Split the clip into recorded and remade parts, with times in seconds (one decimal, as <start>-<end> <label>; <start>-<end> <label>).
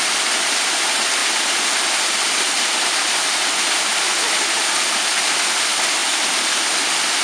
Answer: 0.0-7.2 recorded